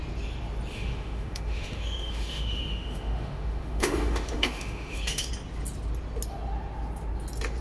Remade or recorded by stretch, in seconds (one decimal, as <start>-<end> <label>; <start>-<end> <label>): 0.0-0.7 recorded; 0.7-5.3 remade; 5.3-7.6 recorded